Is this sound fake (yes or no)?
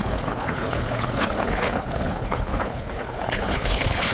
yes